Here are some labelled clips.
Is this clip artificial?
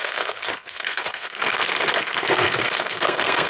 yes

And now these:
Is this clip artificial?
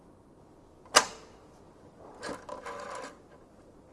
no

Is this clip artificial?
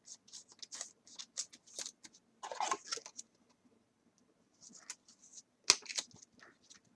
no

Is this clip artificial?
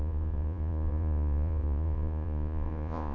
yes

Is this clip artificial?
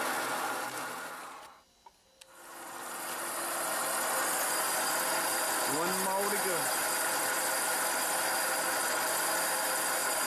no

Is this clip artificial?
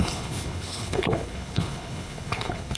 yes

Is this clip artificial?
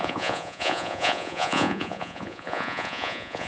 yes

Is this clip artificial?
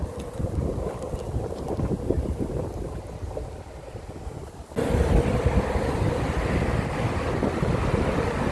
no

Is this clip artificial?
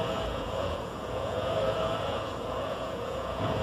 yes